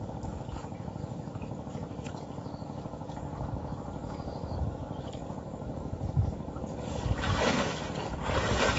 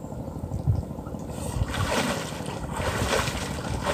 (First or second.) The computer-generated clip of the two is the first